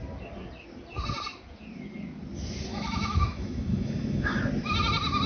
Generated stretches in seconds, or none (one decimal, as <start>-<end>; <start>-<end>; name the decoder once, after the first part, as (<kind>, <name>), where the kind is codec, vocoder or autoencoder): 2.7-4.4 (autoencoder, DAC-VAE)